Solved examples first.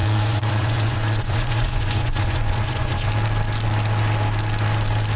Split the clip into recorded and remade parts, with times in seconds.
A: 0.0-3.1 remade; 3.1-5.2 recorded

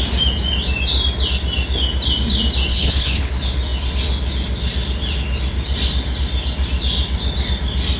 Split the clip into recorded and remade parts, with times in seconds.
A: 0.0-2.7 recorded; 2.7-3.3 remade; 3.3-8.0 recorded